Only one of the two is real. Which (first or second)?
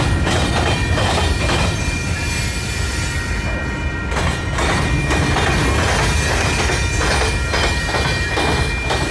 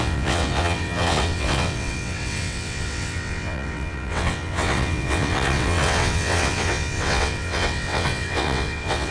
first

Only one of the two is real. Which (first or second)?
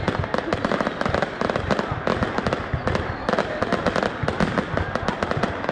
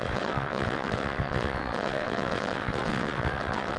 first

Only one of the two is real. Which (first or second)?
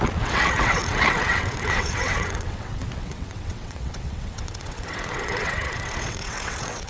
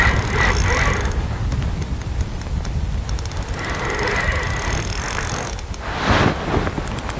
second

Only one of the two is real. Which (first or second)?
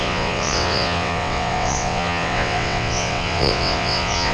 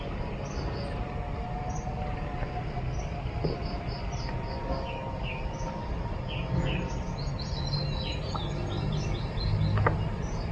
second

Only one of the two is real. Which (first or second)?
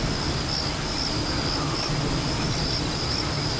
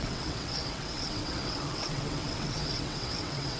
first